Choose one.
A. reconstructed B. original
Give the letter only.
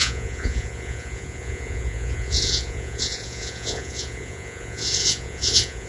A